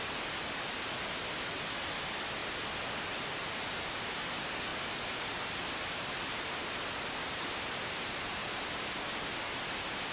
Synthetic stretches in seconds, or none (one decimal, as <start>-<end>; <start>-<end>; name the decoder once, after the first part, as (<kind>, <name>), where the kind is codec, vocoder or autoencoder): 0.4-1.5 (vocoder, BigVGAN v2); 8.4-8.9